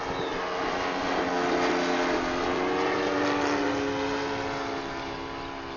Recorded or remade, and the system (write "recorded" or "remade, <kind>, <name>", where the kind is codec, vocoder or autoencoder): recorded